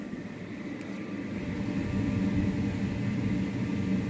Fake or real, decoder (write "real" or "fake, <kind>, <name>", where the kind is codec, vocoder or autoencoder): real